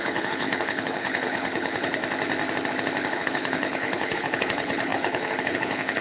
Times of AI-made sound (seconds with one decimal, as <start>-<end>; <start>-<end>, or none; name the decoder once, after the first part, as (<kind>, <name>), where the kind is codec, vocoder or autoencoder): 0.0-2.0 (codec, HILCodec); 3.1-6.0